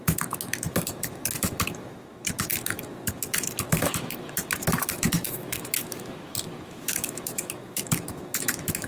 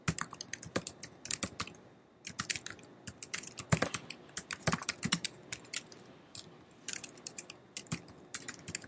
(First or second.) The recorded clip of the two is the second